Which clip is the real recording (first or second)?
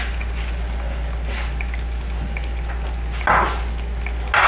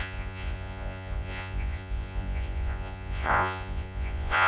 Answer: first